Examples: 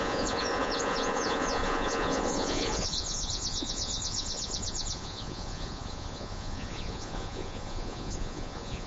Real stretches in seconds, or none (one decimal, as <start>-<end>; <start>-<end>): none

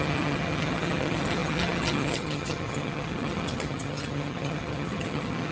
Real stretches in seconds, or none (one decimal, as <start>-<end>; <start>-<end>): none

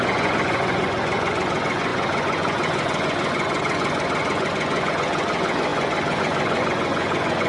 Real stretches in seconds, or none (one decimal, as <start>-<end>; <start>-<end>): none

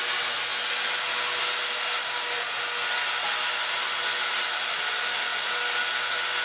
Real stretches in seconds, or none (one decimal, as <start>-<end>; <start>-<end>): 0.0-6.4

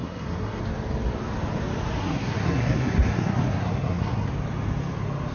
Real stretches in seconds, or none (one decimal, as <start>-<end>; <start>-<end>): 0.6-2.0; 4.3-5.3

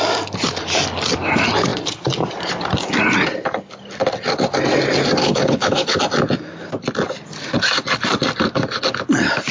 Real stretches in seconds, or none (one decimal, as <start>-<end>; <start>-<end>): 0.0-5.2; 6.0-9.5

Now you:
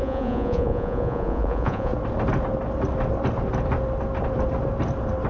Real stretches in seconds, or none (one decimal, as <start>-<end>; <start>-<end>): 1.9-5.3